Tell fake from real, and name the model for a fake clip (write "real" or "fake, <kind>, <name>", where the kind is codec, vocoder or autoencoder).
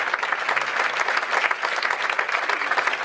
real